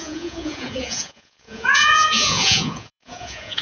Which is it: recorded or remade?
remade